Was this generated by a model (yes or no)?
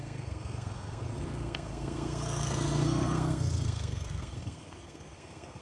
yes